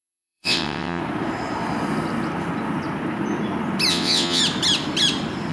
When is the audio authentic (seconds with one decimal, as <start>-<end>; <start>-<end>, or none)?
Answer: 1.0-3.9; 4.4-5.5